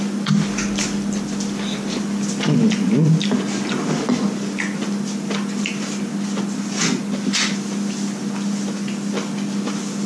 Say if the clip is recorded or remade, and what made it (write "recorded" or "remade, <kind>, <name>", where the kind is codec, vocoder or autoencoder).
recorded